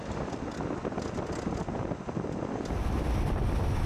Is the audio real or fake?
real